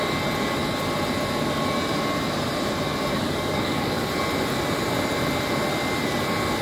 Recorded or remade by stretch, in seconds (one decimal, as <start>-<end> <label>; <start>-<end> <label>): 0.0-3.1 recorded; 3.1-4.0 remade; 4.0-6.6 recorded